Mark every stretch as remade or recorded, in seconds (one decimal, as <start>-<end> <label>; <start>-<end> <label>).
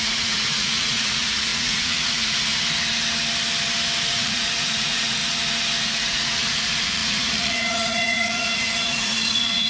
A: 0.0-2.5 remade; 2.5-4.1 recorded; 4.1-5.2 remade; 5.2-5.8 recorded; 5.8-9.7 remade